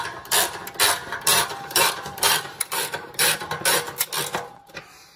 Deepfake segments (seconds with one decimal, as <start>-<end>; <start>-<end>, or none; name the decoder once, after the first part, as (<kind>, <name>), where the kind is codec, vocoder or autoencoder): 1.3-4.1 (vocoder, BigVGAN v2)